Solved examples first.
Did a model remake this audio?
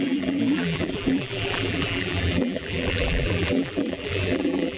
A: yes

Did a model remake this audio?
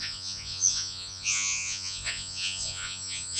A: yes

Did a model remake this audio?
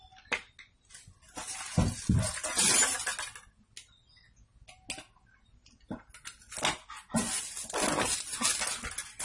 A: no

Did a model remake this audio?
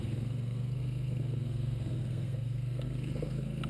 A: yes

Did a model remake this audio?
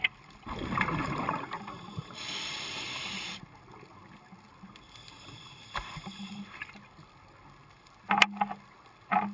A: no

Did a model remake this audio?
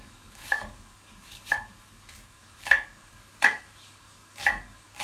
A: yes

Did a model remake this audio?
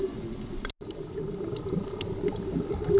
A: no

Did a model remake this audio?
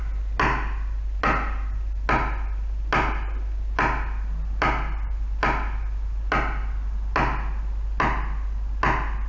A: no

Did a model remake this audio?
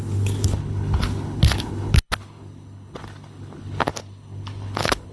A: yes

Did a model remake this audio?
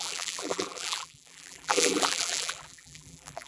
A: yes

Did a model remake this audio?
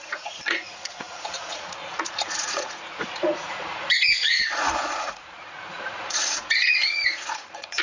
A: yes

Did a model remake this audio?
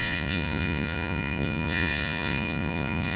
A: yes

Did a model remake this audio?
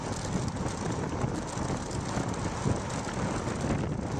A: no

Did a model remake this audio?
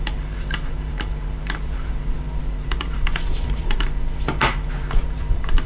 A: yes